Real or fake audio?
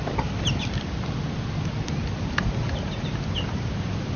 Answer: real